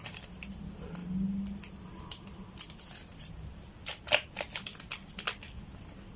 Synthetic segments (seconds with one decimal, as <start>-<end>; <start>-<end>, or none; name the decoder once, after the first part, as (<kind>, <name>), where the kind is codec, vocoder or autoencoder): none